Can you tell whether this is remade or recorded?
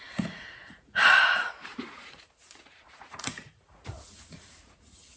remade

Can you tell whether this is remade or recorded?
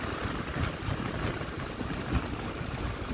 recorded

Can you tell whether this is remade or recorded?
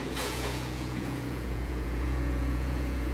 remade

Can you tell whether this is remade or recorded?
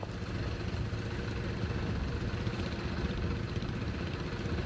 recorded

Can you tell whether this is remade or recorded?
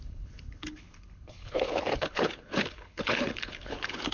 remade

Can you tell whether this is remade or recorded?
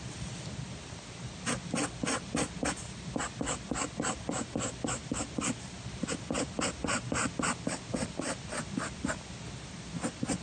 recorded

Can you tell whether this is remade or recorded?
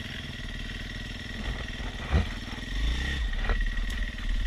recorded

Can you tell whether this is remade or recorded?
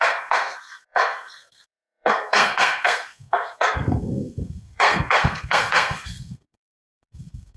remade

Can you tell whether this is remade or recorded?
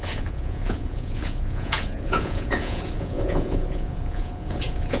remade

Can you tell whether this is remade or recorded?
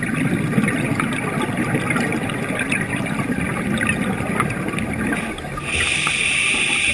recorded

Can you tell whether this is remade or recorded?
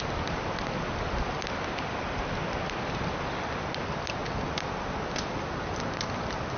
recorded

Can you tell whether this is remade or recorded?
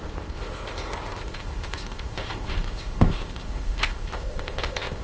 remade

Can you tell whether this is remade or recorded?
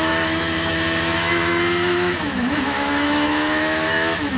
remade